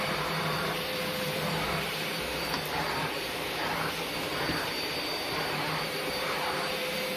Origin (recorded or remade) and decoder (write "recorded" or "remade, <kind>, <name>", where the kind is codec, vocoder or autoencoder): remade, vocoder, BigVGAN v2